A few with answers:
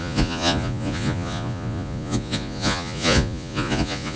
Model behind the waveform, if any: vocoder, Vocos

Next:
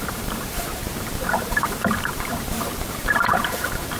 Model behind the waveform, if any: vocoder, BigVGAN v2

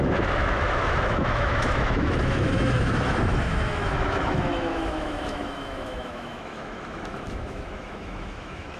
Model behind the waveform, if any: autoencoder, DAC-VAE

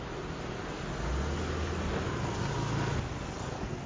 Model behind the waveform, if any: none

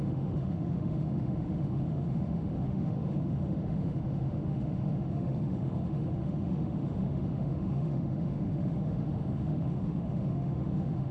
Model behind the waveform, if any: autoencoder, DAC-VAE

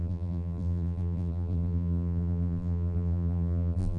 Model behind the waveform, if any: vocoder, BigVGAN v2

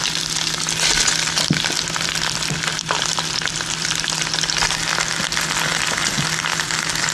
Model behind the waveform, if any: none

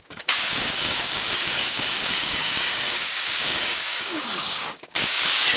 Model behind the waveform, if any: codec, DAC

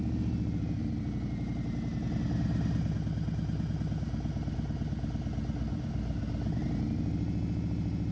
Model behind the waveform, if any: none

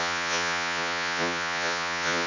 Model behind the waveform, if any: vocoder, Vocos